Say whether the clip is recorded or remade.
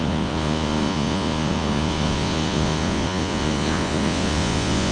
remade